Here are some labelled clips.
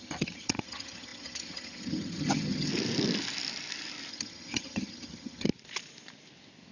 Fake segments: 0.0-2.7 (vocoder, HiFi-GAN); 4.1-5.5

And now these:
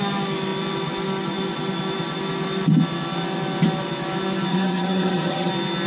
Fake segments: 4.5-5.5 (vocoder, HiFi-GAN)

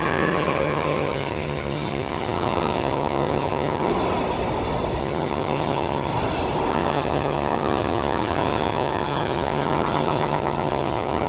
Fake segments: 0.0-3.9 (vocoder, HiFi-GAN); 5.0-6.1; 6.7-11.3

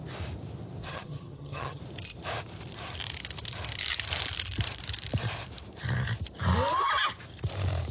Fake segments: 0.9-1.8 (vocoder, HiFi-GAN)